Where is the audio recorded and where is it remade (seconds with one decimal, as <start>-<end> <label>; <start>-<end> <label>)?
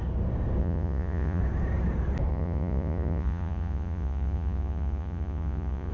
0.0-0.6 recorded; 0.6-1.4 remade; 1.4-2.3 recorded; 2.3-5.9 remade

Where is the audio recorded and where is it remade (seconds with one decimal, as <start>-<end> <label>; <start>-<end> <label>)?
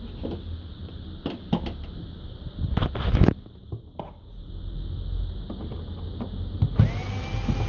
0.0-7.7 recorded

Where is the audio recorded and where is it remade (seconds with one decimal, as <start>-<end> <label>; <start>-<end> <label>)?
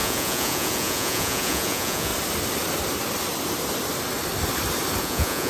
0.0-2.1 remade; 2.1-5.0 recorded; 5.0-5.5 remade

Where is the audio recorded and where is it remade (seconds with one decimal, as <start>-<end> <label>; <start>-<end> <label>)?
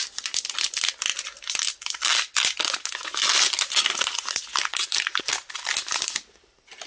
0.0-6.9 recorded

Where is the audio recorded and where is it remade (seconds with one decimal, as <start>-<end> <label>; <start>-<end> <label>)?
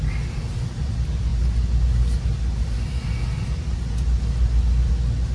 0.0-5.3 recorded